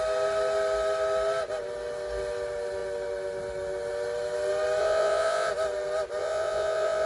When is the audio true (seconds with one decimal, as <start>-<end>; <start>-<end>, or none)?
0.0-4.8; 5.5-6.2

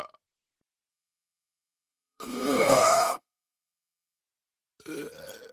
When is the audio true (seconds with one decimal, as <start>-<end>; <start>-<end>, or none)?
0.0-0.9; 4.2-5.5

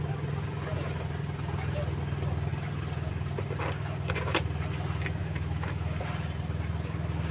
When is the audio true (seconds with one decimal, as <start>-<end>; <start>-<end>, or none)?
0.0-5.2; 6.0-7.3

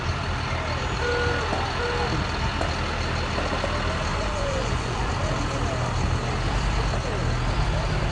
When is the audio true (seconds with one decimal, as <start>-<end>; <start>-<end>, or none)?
0.0-4.1; 5.1-8.1

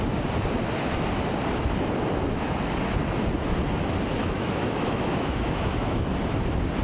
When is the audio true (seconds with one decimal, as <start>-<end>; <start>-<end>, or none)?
0.0-4.2; 6.1-6.8

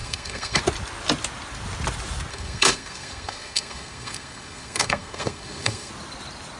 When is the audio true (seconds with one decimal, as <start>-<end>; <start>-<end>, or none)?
0.6-2.3; 5.9-6.6

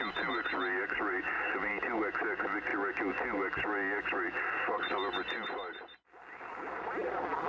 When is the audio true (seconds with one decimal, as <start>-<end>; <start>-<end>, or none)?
0.0-7.5

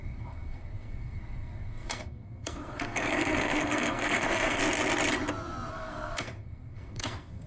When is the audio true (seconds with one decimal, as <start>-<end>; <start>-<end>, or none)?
4.6-5.7